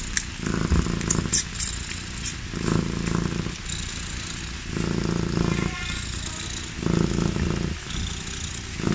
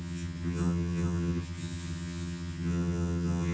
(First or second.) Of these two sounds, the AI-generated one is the second